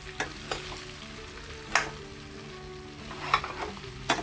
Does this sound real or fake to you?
real